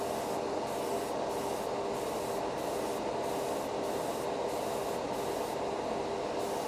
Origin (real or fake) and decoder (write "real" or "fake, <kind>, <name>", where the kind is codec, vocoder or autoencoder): real